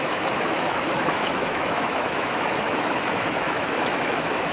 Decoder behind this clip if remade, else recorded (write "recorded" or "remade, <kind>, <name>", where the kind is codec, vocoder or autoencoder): remade, autoencoder, DAC-VAE